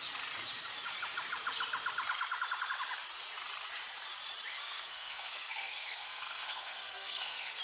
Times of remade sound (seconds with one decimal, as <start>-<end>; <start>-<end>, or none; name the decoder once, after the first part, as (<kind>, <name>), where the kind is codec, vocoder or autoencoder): 4.6-7.6 (codec, SNAC)